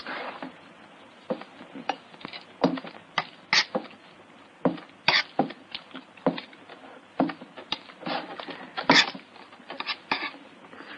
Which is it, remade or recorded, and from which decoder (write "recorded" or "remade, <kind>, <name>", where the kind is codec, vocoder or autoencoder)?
recorded